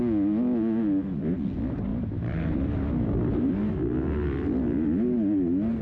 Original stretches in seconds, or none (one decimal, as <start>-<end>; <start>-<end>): 0.0-1.9; 3.5-5.8